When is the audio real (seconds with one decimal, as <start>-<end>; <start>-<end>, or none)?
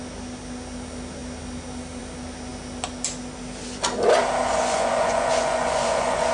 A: 0.0-4.5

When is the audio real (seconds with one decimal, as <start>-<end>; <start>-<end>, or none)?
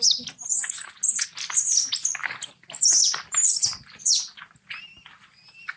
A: 0.0-5.8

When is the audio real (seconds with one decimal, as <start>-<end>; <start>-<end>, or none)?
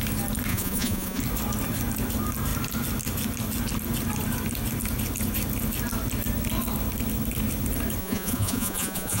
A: 0.0-0.5; 1.2-8.0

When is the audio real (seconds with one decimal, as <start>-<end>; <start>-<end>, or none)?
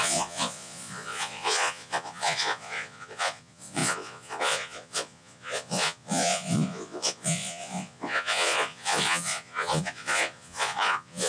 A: none